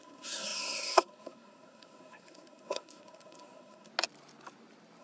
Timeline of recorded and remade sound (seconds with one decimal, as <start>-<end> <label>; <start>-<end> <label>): 0.0-3.9 remade; 3.9-5.0 recorded